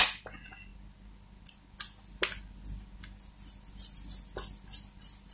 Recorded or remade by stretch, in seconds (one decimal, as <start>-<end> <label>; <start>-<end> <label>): 0.0-5.3 recorded